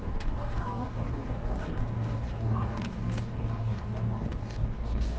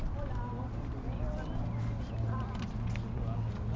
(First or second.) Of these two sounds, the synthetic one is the first